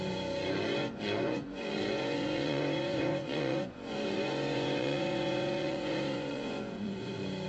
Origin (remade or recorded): remade